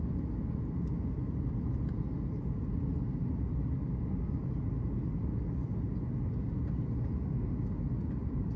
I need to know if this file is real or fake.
real